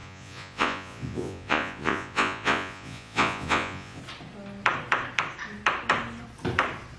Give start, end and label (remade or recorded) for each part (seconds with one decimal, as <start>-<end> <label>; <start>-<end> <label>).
0.0-4.0 remade; 4.0-7.0 recorded